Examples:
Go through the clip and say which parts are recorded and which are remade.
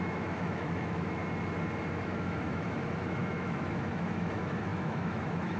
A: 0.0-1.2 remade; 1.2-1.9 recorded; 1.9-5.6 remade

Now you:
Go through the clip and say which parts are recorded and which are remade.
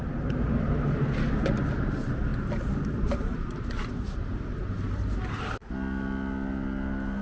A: 0.0-7.2 recorded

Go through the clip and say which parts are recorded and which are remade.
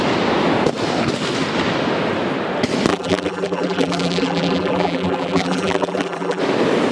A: 0.0-2.9 recorded; 2.9-6.4 remade; 6.4-6.9 recorded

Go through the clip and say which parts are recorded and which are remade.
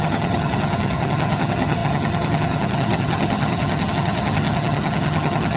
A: 0.0-5.6 remade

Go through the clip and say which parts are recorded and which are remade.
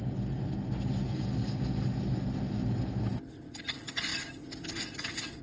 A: 0.0-5.4 recorded